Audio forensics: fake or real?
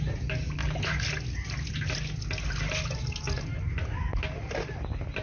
real